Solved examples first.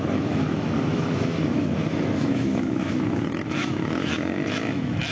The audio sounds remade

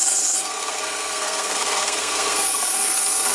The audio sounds remade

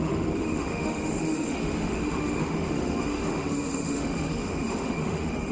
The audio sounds remade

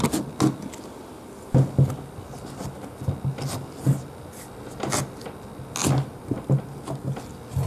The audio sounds recorded